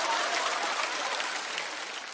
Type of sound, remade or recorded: recorded